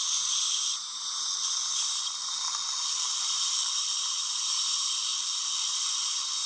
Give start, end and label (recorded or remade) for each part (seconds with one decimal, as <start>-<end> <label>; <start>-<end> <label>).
0.0-2.2 recorded; 2.2-4.0 remade; 4.0-5.1 recorded; 5.1-5.8 remade; 5.8-6.5 recorded